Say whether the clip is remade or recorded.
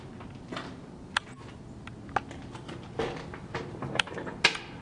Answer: recorded